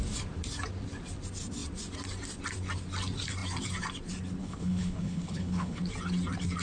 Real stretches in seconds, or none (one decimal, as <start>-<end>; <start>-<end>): 0.0-4.4; 5.8-6.6